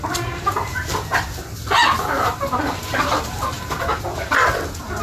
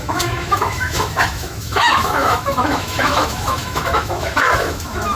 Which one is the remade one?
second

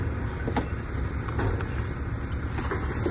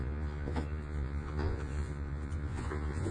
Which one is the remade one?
second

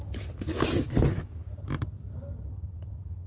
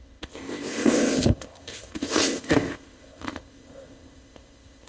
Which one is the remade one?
second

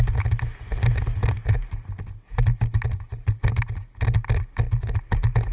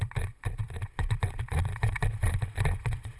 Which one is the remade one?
second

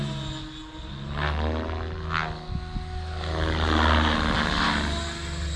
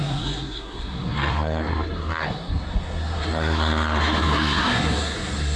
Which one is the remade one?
second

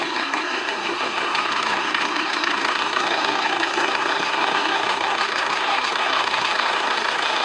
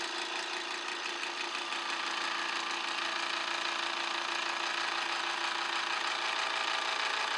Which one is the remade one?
first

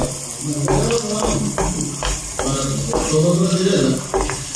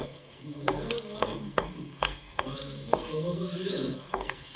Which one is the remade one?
second